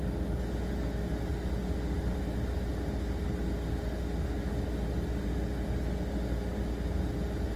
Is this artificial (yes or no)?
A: no